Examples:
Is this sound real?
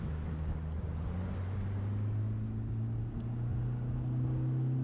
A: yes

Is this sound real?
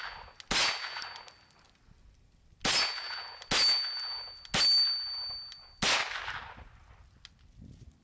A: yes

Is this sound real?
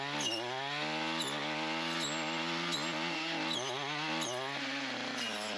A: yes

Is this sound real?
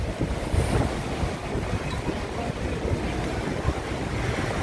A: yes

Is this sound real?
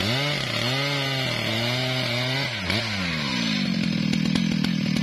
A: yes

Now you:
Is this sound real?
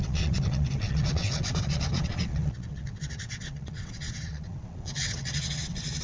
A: no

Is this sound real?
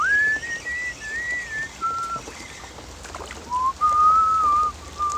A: yes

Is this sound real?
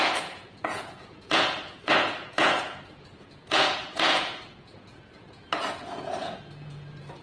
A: no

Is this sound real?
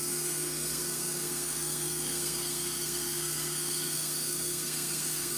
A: no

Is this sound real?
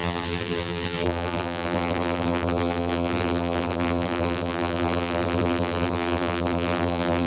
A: no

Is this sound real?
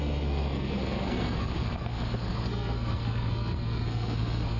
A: no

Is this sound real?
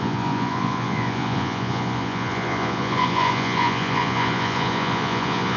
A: no